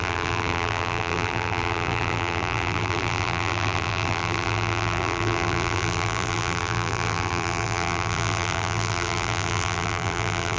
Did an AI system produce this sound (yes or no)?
yes